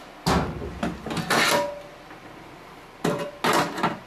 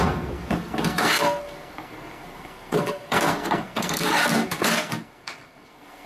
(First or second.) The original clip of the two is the first